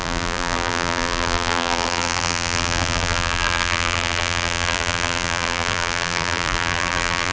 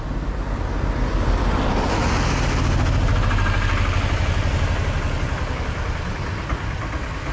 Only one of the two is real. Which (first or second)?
second